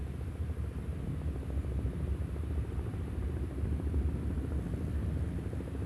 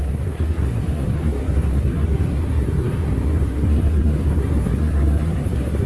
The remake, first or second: second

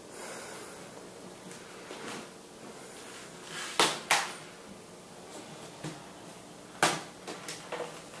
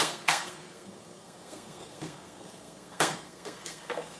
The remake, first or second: second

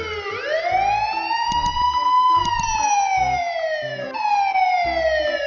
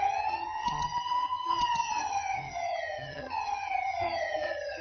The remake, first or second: second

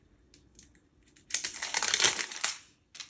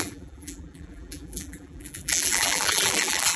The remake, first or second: second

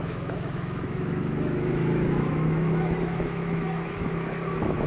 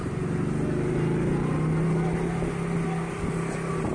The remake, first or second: first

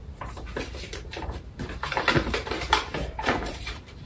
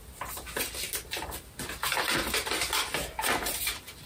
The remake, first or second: first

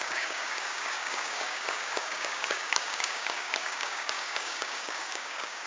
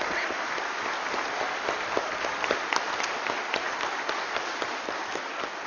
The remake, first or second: first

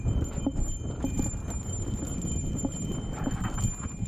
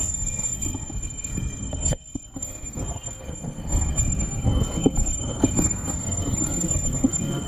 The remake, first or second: second